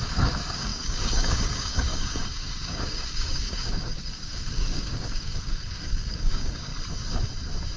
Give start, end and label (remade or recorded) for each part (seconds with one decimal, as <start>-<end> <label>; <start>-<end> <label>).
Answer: 0.0-6.7 remade; 6.7-7.8 recorded